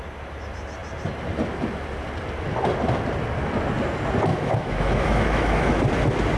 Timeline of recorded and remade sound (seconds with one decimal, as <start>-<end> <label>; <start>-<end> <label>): 0.0-4.3 recorded; 4.3-5.9 remade; 5.9-6.4 recorded